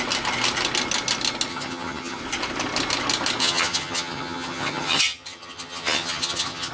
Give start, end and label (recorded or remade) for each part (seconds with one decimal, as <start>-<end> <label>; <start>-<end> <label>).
0.0-1.5 recorded; 1.5-2.2 remade; 2.2-3.4 recorded; 3.4-6.7 remade